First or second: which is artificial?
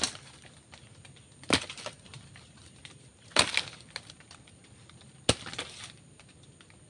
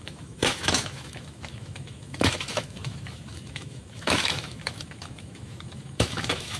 second